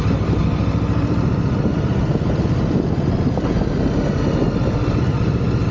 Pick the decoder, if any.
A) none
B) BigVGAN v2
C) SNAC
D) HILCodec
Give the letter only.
A